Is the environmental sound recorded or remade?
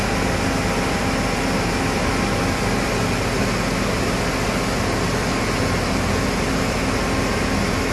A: recorded